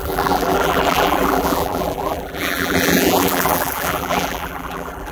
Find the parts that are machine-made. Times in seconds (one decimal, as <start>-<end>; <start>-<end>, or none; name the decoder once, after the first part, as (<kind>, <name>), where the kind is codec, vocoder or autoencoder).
0.0-5.1 (vocoder, BigVGAN v2)